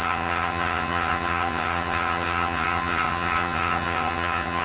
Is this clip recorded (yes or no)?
no